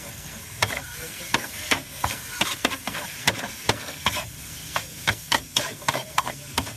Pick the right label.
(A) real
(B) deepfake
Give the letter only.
B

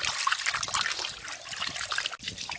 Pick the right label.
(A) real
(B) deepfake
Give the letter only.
A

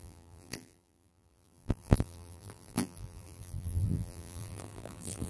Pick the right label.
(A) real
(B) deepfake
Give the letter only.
B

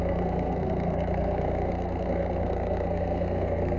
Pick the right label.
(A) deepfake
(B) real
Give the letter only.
A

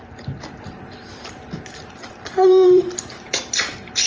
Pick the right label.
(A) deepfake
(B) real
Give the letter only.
A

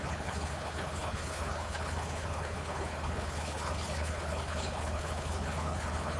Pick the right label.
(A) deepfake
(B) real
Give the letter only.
A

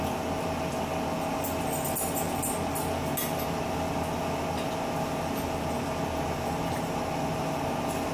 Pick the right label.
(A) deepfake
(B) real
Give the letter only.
B